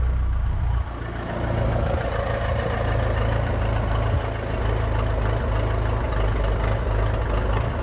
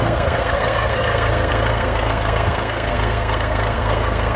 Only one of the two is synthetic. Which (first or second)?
second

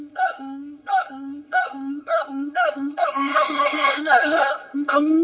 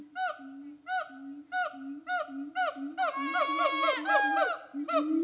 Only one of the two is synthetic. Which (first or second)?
first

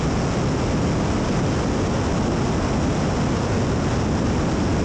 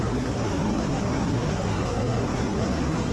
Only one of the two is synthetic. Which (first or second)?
second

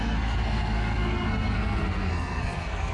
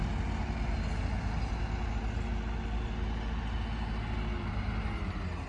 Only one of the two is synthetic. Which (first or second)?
first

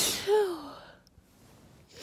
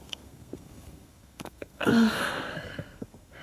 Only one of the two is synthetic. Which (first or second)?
second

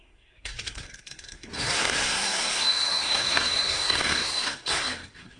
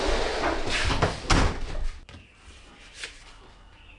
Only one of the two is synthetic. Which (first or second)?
first